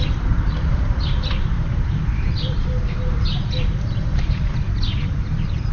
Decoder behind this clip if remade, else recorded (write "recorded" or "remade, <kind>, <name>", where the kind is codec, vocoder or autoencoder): remade, vocoder, BigVGAN v2